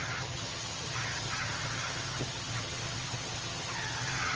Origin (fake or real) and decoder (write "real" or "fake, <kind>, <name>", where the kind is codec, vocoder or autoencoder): fake, vocoder, HiFi-GAN